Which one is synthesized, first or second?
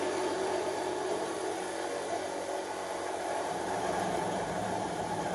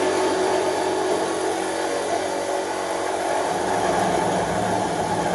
first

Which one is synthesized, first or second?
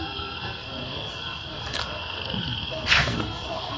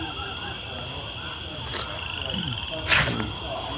first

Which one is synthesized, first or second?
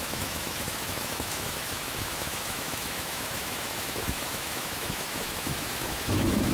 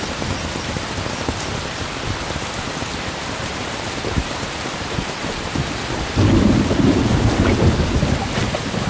first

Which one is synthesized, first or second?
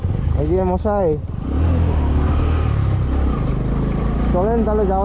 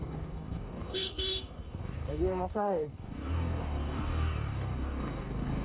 second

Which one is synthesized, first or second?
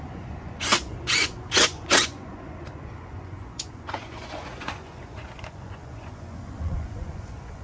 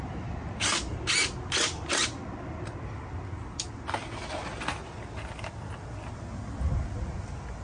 first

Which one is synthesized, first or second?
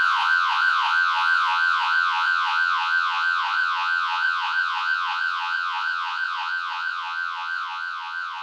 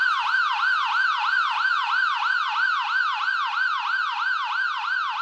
first